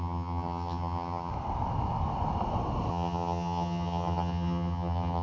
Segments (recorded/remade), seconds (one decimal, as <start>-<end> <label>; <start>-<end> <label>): 0.0-1.3 remade; 1.3-2.9 recorded; 2.9-5.2 remade